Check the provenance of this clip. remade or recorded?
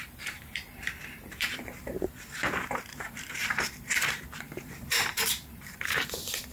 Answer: remade